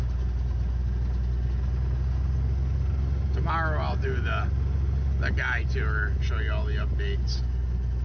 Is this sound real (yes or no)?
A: yes